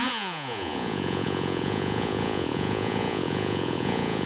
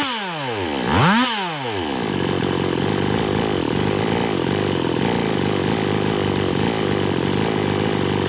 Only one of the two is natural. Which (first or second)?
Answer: second